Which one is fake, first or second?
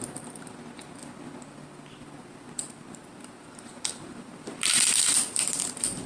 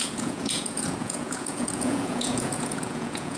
second